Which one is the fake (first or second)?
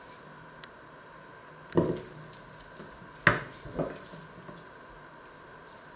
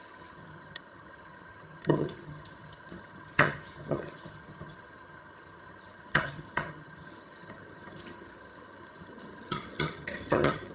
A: second